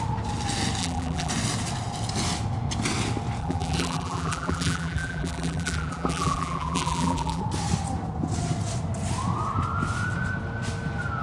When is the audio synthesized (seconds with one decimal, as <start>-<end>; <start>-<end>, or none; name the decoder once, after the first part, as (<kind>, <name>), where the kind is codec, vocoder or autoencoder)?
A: 0.8-1.3 (vocoder, BigVGAN v2); 3.4-7.4